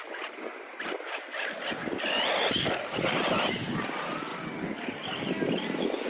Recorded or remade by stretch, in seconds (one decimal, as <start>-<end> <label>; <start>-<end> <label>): 0.0-6.1 recorded